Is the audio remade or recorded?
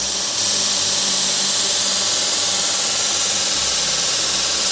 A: remade